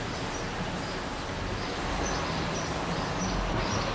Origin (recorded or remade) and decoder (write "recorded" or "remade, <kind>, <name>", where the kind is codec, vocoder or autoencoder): recorded